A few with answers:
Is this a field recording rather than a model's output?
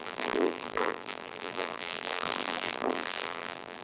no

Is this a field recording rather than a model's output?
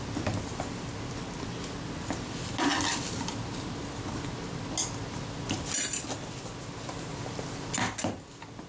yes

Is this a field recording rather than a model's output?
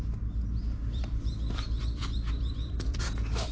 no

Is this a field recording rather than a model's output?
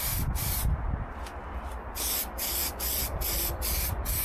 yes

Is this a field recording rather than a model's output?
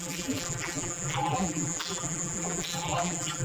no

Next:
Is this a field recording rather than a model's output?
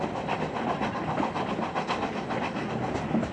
yes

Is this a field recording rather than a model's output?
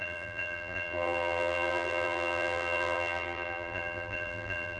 no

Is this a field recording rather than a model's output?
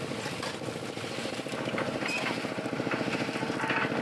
yes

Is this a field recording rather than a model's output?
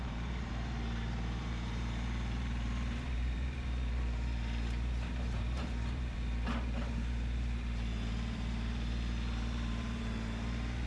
no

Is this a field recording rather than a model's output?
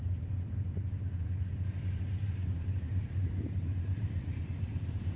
no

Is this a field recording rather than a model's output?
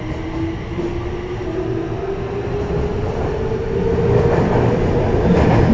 yes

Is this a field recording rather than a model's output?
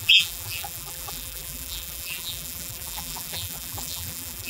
no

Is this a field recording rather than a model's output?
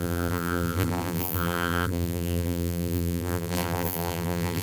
no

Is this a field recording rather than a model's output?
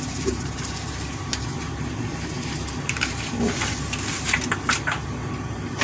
no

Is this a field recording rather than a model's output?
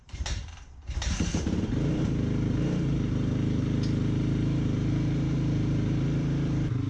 no